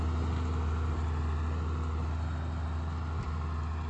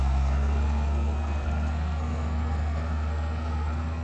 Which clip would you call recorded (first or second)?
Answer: first